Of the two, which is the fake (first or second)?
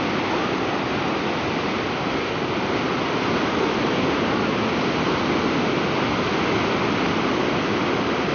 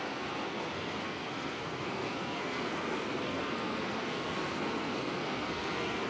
second